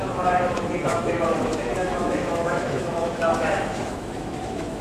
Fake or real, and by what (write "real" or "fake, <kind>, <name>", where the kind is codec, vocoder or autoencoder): fake, autoencoder, DAC-VAE